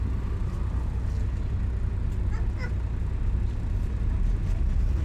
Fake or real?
real